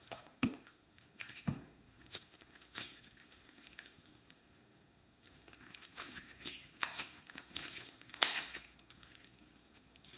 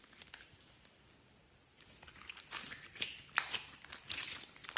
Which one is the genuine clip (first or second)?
second